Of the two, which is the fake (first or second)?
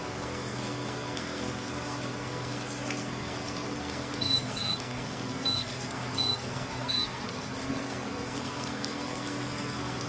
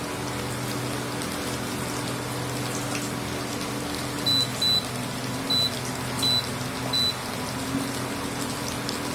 first